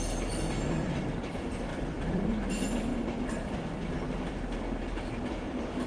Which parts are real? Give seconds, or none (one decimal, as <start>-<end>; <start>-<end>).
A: 0.0-1.7; 2.3-5.9